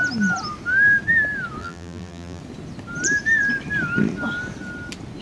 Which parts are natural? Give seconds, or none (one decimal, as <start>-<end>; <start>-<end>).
0.0-1.6; 2.4-5.2